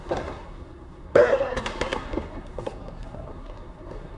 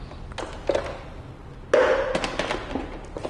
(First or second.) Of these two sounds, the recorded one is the second